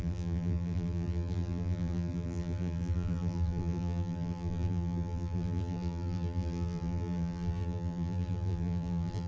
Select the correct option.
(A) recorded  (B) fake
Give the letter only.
B